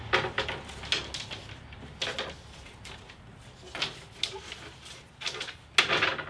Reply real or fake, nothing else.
real